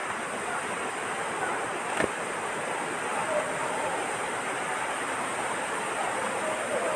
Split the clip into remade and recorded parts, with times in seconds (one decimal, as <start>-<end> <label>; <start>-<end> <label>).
0.0-7.0 recorded